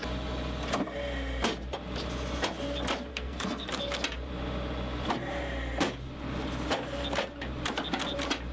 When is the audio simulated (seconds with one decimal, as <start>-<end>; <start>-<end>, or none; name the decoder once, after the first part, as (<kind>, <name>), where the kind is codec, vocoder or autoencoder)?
3.1-3.7 (codec, SNAC)